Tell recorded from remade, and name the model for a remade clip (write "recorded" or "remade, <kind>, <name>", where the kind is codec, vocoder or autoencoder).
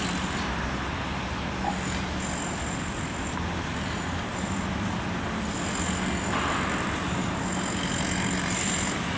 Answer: recorded